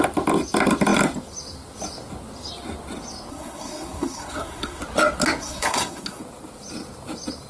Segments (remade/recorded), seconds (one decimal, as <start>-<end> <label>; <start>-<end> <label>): 0.0-3.3 recorded; 3.3-4.8 remade; 4.8-5.4 recorded; 5.4-6.2 remade; 6.2-7.5 recorded